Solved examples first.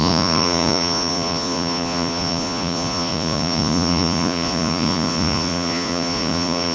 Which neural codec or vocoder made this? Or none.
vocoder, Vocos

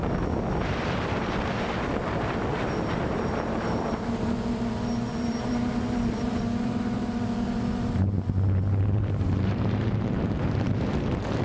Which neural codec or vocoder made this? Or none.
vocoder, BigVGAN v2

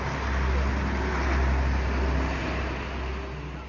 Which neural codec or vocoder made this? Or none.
none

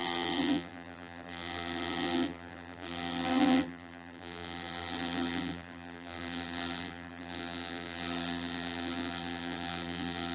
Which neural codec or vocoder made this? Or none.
vocoder, BigVGAN v2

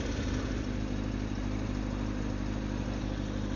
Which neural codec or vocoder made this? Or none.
none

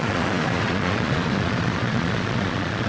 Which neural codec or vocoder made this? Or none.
vocoder, Vocos